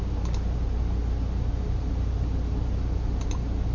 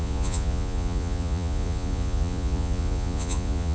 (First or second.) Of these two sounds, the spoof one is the second